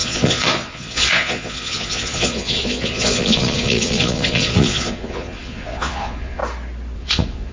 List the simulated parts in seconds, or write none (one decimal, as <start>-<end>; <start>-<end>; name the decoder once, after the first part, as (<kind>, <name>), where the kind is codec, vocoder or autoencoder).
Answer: 0.0-6.4 (vocoder, Vocos); 7.0-7.5